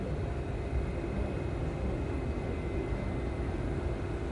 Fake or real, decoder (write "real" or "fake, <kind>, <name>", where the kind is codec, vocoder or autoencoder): real